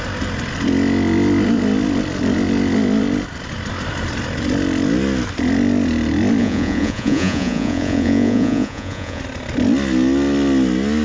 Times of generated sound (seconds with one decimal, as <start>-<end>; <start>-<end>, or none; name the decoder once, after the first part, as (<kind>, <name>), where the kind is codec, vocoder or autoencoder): 6.4-9.2 (vocoder, Vocos)